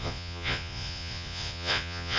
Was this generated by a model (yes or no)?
yes